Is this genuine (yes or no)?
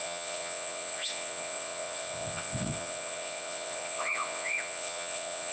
no